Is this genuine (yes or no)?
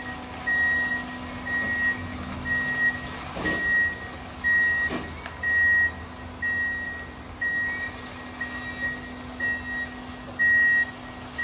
yes